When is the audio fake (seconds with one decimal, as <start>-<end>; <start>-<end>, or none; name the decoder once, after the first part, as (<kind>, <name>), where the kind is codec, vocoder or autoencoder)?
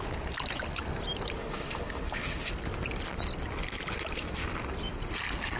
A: 1.4-2.5 (autoencoder, DAC-VAE)